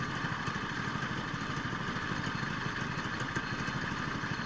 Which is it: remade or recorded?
recorded